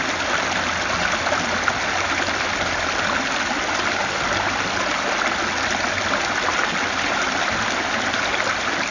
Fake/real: real